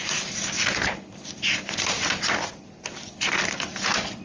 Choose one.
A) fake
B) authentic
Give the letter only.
B